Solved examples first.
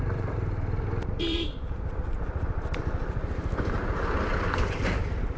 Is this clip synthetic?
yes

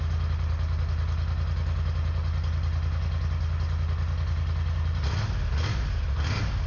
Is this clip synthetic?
no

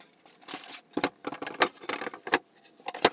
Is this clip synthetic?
no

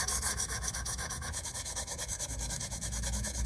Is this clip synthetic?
yes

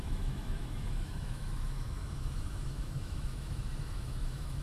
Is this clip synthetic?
yes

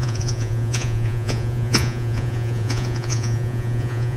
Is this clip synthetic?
yes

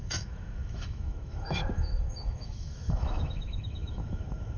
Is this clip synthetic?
yes